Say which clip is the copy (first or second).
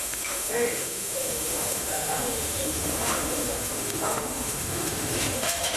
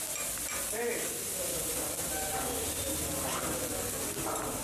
first